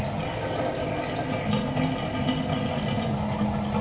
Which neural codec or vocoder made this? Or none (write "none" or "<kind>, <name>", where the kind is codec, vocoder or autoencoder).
none